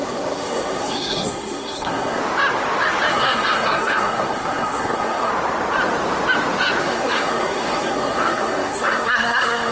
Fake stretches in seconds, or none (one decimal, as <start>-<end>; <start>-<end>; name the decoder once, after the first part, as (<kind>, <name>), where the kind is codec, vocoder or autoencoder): 0.0-2.2 (codec, SNAC); 3.1-5.3; 6.8-9.7

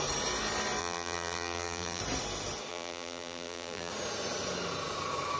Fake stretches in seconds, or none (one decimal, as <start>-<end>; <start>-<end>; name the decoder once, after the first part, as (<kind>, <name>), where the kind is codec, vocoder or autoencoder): 0.8-2.0 (vocoder, BigVGAN v2); 2.7-3.9

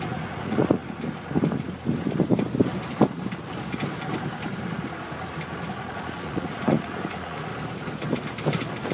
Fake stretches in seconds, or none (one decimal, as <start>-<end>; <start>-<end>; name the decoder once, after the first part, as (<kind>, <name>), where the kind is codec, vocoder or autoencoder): 0.0-0.8 (vocoder, Vocos); 5.9-7.5

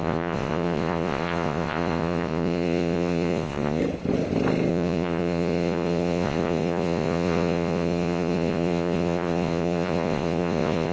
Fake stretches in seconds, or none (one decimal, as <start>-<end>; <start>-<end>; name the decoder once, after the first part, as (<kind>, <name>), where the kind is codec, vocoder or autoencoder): 0.0-3.8 (vocoder, Vocos); 4.7-10.9

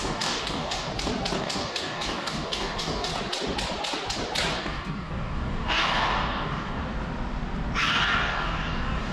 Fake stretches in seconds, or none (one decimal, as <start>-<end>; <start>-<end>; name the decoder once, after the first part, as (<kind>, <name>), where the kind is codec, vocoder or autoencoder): 0.0-0.9 (codec, DAC); 1.4-3.1; 4.6-6.8; 7.8-9.1

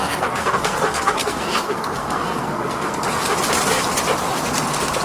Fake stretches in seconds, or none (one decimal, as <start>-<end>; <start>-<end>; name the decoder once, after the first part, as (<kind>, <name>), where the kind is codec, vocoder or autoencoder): 0.0-3.0 (codec, SNAC)

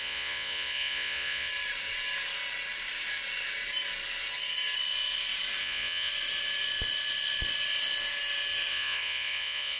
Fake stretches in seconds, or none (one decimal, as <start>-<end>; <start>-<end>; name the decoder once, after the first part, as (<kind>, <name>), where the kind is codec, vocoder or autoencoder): 0.0-1.5 (vocoder, Vocos); 5.6-6.1; 8.7-9.8

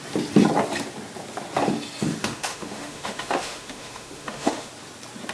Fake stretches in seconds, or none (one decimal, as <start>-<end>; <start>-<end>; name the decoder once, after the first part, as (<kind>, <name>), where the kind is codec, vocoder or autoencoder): 2.2-4.7 (autoencoder, DAC-VAE)